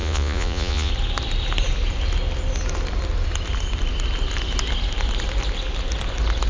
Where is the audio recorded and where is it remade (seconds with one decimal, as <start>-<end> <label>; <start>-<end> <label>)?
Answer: 0.0-0.9 remade; 0.9-6.5 recorded

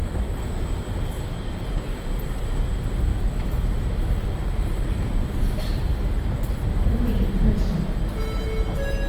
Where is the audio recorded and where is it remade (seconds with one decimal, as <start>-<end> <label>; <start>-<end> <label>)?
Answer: 0.0-3.1 recorded; 3.1-3.7 remade; 3.7-9.1 recorded